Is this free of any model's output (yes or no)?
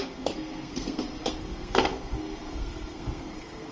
no